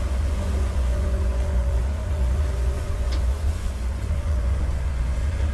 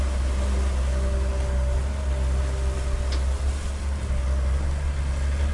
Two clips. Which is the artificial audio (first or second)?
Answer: first